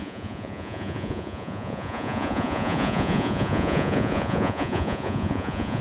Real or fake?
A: fake